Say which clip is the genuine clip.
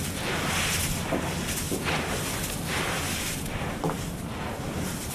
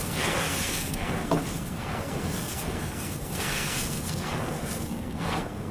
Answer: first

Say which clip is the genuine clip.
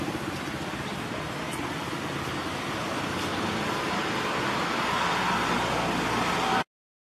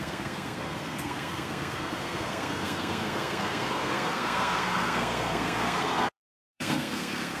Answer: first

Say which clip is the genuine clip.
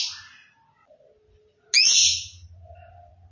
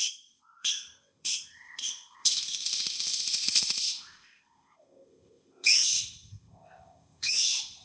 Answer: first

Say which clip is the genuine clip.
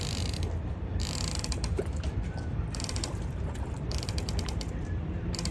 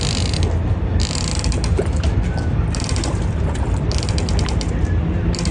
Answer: second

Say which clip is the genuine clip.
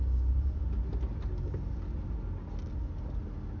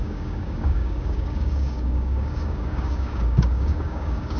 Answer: first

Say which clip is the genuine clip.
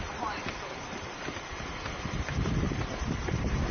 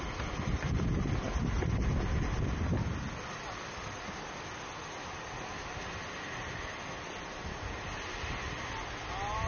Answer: second